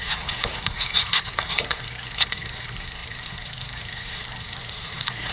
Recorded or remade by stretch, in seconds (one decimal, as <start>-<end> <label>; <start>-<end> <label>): 0.0-5.3 remade